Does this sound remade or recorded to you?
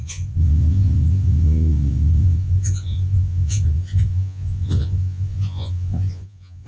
remade